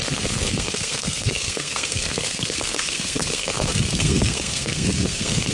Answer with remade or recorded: remade